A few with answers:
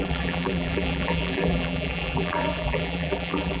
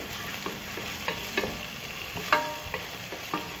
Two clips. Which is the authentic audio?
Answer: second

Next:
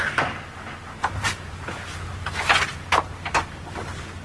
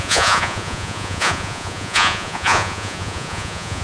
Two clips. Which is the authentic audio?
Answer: first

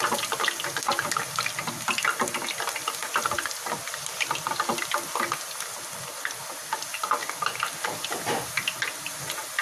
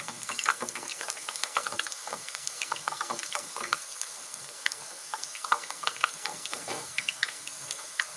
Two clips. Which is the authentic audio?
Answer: first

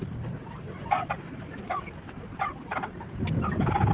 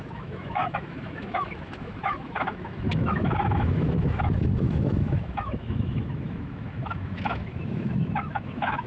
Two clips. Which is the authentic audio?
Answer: first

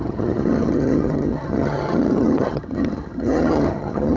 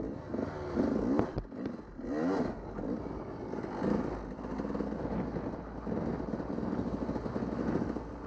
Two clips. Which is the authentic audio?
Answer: second